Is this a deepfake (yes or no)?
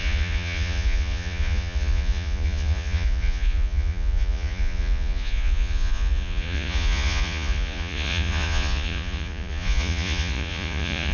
yes